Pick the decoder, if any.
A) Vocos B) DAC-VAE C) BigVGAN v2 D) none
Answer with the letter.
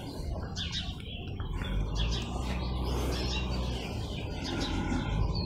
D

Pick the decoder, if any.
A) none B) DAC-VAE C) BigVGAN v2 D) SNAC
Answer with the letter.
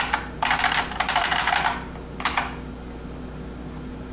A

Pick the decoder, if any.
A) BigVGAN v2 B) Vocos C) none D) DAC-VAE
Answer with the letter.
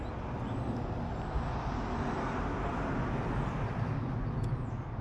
C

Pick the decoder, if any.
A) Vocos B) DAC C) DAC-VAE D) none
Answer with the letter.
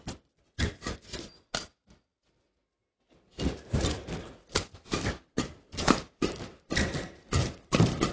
D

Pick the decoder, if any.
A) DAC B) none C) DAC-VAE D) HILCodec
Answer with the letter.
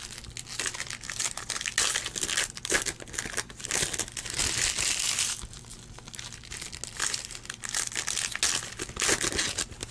B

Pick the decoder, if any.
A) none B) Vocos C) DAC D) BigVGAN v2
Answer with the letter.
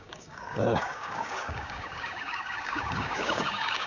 C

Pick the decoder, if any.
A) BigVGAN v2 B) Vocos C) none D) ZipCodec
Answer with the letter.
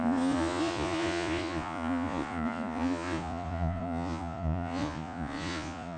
B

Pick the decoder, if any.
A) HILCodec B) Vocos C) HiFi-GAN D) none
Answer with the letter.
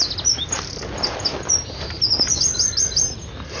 D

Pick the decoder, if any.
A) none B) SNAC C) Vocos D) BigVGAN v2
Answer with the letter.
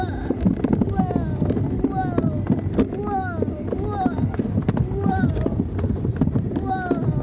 A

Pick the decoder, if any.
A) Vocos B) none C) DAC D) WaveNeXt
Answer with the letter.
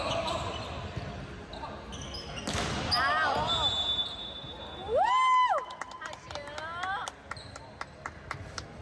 B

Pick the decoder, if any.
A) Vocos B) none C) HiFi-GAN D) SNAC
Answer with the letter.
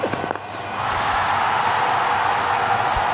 B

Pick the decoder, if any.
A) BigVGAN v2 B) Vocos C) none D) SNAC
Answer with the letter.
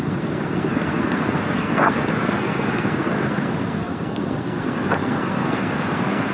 D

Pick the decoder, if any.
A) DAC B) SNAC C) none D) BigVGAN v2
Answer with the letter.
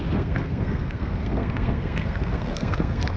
B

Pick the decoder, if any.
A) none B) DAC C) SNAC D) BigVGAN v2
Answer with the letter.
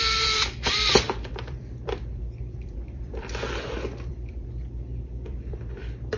D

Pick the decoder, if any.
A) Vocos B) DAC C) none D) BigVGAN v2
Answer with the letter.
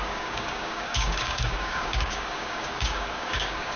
B